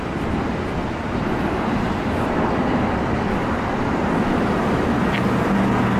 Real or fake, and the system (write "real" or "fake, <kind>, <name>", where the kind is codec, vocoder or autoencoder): real